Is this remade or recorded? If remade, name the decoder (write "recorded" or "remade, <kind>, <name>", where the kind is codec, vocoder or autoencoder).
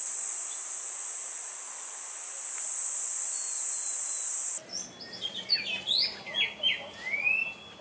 recorded